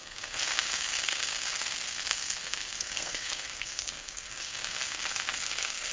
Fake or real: fake